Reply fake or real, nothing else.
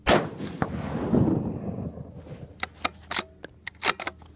real